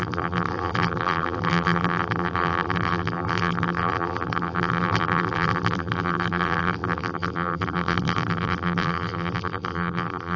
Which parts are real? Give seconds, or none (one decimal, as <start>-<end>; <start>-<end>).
none